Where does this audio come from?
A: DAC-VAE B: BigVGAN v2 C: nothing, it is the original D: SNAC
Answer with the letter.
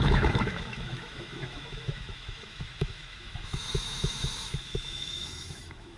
A